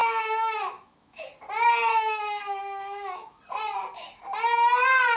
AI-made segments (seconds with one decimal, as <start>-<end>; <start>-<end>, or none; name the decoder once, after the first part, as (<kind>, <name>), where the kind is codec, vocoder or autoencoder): 0.0-1.2 (autoencoder, DAC-VAE); 1.9-3.4